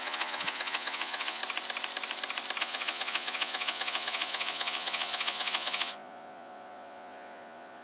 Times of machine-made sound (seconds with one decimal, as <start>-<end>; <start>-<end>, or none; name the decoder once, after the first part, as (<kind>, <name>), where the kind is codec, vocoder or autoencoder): 0.0-1.4 (vocoder, Vocos); 2.6-7.8

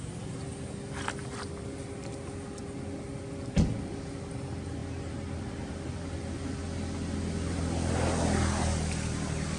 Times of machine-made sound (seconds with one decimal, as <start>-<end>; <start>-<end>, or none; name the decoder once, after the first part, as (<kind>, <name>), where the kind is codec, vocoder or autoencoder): none

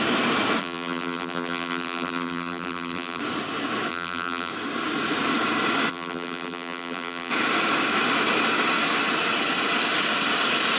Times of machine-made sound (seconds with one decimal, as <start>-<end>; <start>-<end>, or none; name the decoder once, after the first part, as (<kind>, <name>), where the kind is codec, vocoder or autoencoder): 0.6-3.2 (vocoder, BigVGAN v2); 3.9-4.5; 5.9-7.3

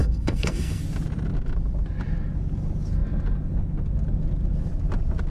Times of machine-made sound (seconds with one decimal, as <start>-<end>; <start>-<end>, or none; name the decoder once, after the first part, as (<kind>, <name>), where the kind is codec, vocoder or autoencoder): 0.0-0.8 (codec, SNAC)

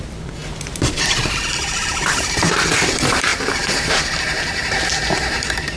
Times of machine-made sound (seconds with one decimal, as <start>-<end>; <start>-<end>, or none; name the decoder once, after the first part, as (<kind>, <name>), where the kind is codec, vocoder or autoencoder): 0.0-0.4 (vocoder, BigVGAN v2); 1.6-5.8

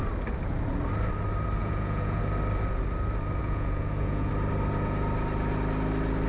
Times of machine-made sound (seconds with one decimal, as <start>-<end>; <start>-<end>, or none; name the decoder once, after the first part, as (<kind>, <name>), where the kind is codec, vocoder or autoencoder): 1.6-2.2 (vocoder, Vocos); 3.4-4.3

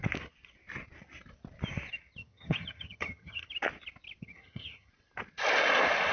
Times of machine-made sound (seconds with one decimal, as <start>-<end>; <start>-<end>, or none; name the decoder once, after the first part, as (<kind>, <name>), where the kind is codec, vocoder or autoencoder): 2.2-3.5 (vocoder, HiFi-GAN); 4.2-4.9